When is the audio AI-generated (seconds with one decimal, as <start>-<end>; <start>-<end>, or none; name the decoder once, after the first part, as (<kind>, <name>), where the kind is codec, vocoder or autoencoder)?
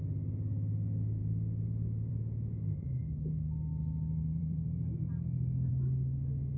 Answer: 4.3-5.1 (vocoder, BigVGAN v2)